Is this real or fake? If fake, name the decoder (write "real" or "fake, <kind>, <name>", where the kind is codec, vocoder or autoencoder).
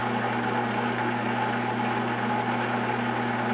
real